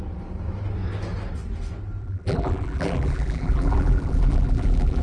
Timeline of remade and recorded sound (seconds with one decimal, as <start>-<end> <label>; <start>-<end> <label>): 0.0-2.0 recorded; 2.0-5.0 remade

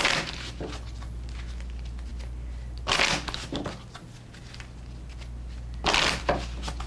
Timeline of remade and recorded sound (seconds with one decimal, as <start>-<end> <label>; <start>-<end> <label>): 0.0-6.9 recorded

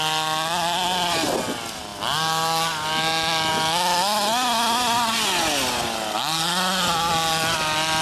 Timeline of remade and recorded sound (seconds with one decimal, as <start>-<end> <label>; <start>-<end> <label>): 0.0-8.0 recorded

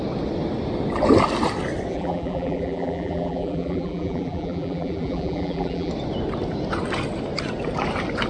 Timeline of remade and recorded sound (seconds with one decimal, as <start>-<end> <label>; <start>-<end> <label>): 0.0-1.9 recorded; 1.9-5.9 remade; 5.9-8.3 recorded

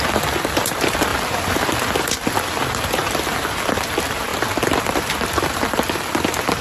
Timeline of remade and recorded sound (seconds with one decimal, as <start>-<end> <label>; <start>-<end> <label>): 0.0-4.3 remade; 4.3-4.8 recorded; 4.8-6.6 remade

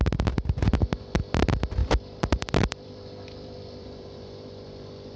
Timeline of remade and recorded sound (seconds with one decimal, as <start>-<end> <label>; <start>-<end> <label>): 0.0-1.8 recorded; 1.8-5.2 remade

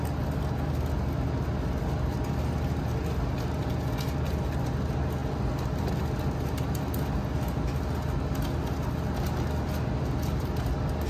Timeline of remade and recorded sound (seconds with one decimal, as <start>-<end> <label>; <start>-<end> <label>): 0.0-11.1 recorded

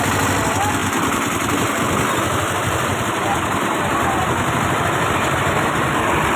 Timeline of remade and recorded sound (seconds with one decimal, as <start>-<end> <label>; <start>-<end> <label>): 0.0-0.8 recorded; 0.8-1.8 remade; 1.8-2.9 recorded; 2.9-3.6 remade; 3.6-6.4 recorded